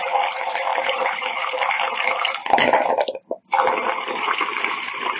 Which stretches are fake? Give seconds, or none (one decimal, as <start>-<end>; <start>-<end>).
0.0-2.4; 4.1-5.2